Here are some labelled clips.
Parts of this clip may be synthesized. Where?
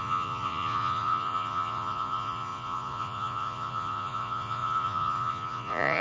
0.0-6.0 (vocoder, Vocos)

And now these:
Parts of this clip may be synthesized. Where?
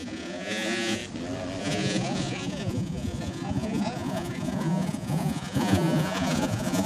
0.0-1.0 (vocoder, Vocos); 1.6-6.9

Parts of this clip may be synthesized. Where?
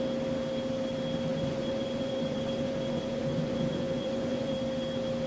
1.3-4.5 (vocoder, Vocos)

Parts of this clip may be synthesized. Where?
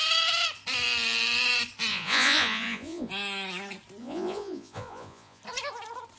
1.9-3.1 (vocoder, Vocos); 4.0-5.4